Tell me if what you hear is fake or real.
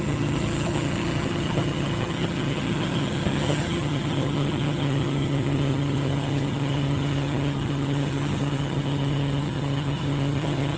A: fake